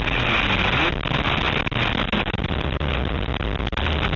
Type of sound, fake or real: real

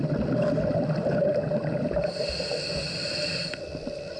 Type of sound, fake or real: real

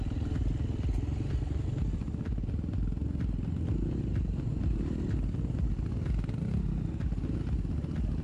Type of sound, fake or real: real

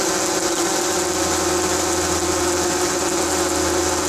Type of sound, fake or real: real